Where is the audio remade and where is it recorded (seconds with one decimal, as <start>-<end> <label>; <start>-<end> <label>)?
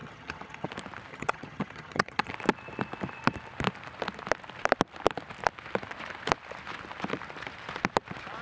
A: 0.0-0.7 remade; 0.7-1.1 recorded; 1.1-2.3 remade; 2.3-8.4 recorded